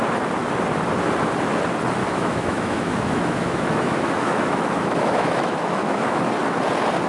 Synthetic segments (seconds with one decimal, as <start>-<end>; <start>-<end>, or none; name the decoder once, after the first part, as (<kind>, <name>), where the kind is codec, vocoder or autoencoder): 2.0-6.3 (autoencoder, DAC-VAE)